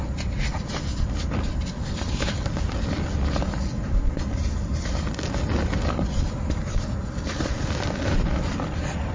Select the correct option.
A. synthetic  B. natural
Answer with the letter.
B